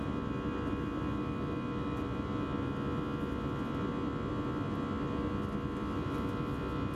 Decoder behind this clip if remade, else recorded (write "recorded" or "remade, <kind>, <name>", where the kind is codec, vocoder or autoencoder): recorded